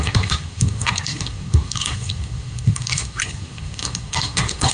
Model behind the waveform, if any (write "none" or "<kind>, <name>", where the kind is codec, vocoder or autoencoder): codec, SNAC